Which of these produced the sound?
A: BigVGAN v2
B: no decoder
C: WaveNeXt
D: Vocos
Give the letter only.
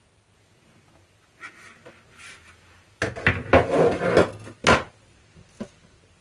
B